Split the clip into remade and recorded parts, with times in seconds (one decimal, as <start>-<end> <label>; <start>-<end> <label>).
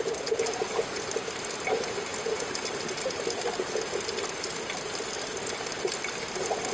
0.0-6.7 recorded